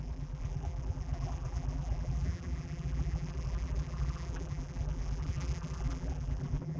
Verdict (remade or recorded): remade